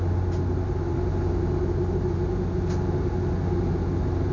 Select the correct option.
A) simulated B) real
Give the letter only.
B